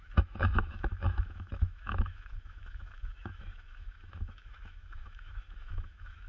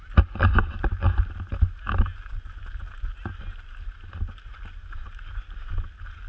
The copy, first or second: first